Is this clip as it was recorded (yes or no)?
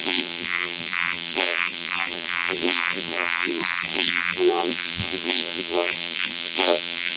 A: no